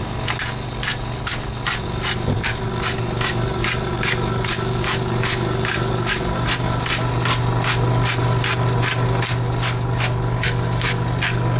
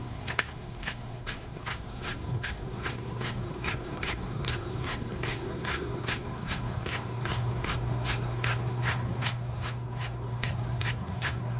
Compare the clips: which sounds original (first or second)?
first